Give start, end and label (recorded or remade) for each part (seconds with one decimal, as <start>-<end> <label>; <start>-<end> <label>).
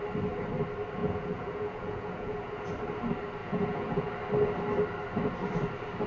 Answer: 0.0-1.0 recorded; 1.0-2.7 remade; 2.7-3.4 recorded; 3.4-4.1 remade; 4.1-6.1 recorded